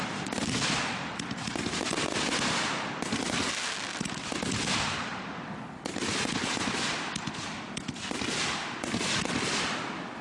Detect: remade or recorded recorded